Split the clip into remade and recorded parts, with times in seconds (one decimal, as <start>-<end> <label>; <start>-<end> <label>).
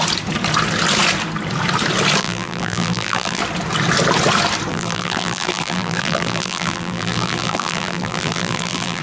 0.0-2.2 recorded; 2.2-3.4 remade; 3.4-4.7 recorded; 4.7-9.0 remade